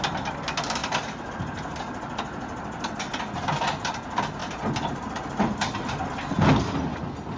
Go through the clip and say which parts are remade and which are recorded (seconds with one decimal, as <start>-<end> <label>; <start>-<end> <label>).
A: 0.0-0.8 recorded; 0.8-1.3 remade; 1.3-4.4 recorded; 4.4-6.1 remade; 6.1-7.4 recorded

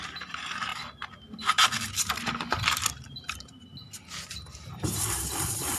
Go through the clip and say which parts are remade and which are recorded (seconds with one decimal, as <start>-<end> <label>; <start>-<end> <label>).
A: 0.0-0.7 remade; 0.7-2.9 recorded; 2.9-3.7 remade; 3.7-4.3 recorded; 4.3-5.8 remade

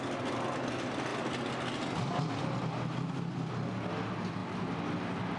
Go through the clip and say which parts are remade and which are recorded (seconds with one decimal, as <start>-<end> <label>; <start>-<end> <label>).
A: 0.0-5.4 recorded

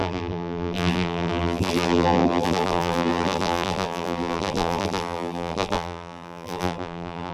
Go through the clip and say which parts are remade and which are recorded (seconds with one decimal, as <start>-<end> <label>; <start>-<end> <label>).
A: 0.0-7.3 remade